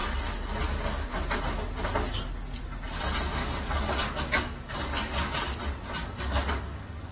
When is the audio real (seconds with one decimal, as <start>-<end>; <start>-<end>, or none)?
0.0-3.4; 5.3-6.0